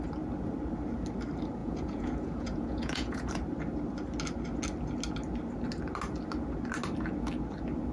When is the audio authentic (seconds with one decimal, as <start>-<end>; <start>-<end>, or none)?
0.0-1.6; 3.3-7.9